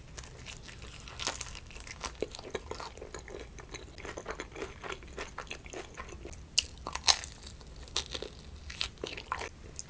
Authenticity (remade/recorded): recorded